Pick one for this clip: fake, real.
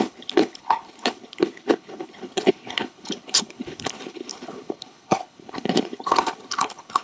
fake